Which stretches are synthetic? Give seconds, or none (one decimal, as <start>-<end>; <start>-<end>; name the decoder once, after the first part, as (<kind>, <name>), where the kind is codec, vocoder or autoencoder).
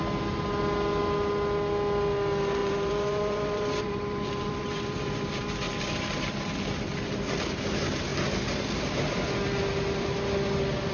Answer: 2.6-7.2 (vocoder, BigVGAN v2)